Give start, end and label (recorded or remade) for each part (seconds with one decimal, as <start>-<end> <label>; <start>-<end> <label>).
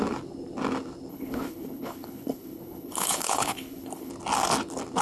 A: 0.0-1.1 recorded; 1.1-4.1 remade; 4.1-5.0 recorded